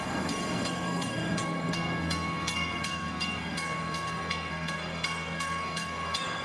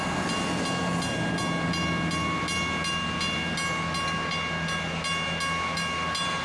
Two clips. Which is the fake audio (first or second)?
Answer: first